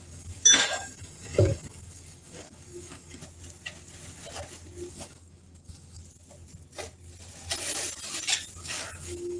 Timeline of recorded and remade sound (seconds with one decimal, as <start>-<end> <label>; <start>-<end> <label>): 0.0-3.2 remade; 3.2-4.9 recorded; 4.9-6.0 remade; 6.0-8.6 recorded; 8.6-9.4 remade